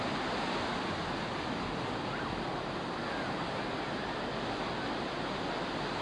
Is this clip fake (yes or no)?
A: no